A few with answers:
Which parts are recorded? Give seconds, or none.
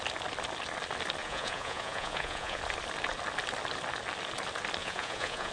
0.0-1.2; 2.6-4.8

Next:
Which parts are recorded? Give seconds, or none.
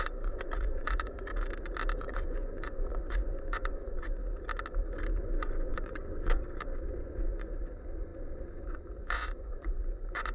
1.3-2.0; 4.2-5.2